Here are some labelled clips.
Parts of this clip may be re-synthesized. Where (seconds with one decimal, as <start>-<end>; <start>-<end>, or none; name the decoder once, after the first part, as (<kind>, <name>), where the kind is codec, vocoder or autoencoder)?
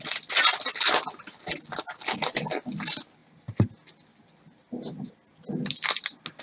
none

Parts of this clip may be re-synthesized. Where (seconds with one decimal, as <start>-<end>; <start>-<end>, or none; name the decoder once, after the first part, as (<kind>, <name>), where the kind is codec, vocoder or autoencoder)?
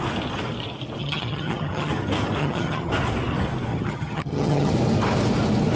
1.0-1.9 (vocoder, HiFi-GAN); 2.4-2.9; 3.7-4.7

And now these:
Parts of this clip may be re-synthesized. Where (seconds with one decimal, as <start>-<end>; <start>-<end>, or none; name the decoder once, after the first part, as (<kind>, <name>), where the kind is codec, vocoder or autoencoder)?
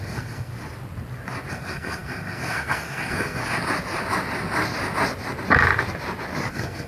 0.0-0.5 (codec, SNAC); 1.5-3.4; 6.5-6.9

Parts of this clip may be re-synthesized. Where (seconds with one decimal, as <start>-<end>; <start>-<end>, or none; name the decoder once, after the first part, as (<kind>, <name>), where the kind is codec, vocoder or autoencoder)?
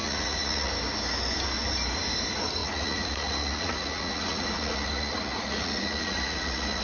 0.0-0.7 (vocoder, Vocos); 2.6-6.8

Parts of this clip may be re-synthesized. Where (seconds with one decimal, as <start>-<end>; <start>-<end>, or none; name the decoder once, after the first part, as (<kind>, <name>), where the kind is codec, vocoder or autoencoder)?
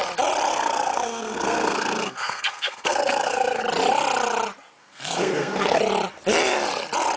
0.5-3.6 (codec, SNAC); 4.8-5.8